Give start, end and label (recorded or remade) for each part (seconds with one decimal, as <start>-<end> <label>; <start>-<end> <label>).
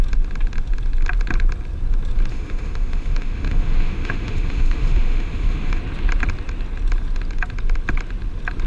0.0-2.3 recorded; 2.3-5.8 remade; 5.8-8.7 recorded